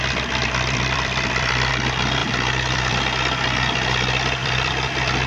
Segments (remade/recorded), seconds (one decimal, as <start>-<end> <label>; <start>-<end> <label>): 0.0-0.4 recorded; 0.4-1.7 remade; 1.7-2.2 recorded; 2.2-3.0 remade; 3.0-4.4 recorded; 4.4-5.3 remade